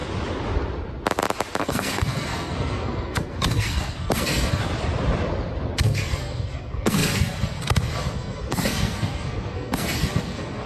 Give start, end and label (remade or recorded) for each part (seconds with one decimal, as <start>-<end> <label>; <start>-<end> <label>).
0.0-1.6 recorded; 1.6-4.6 remade; 4.6-5.8 recorded; 5.8-10.7 remade